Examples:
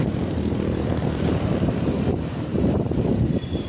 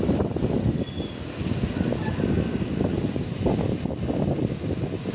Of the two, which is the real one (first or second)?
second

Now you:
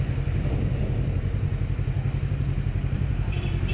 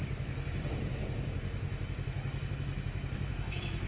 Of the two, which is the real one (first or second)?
first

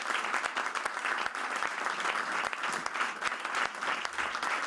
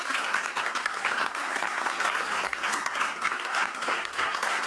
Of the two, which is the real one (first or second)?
first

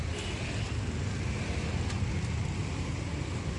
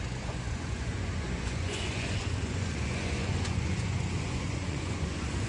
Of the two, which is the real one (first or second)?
first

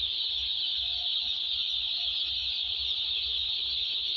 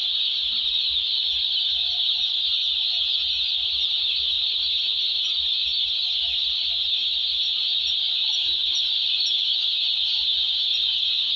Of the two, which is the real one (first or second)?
first